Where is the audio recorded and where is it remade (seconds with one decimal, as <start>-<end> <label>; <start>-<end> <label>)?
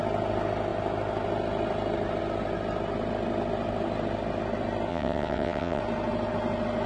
0.0-4.9 recorded; 4.9-5.8 remade; 5.8-6.9 recorded